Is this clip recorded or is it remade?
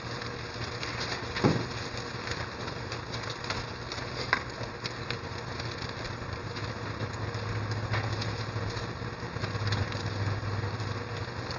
recorded